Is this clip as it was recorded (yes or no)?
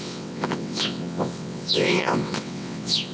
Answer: no